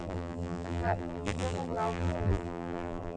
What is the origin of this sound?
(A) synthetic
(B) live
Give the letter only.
A